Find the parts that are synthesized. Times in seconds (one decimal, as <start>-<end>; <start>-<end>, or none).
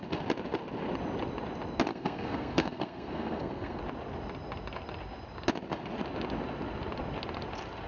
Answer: 1.9-3.8